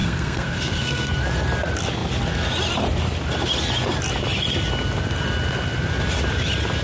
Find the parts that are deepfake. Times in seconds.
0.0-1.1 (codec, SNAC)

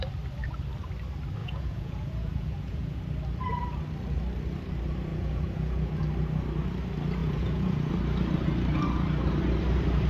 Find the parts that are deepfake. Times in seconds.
1.4-3.0 (vocoder, Vocos); 5.1-6.0; 7.2-7.9

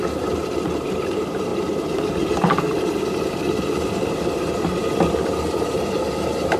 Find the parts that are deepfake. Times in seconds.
0.0-1.5 (vocoder, BigVGAN v2); 5.5-6.6

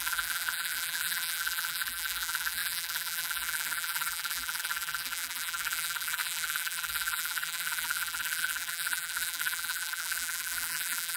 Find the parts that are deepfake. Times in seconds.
0.0-11.2 (vocoder, BigVGAN v2)